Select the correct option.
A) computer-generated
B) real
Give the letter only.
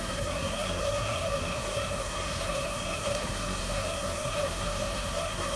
A